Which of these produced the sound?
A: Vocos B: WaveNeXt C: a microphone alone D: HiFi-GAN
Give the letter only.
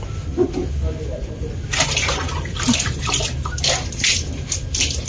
C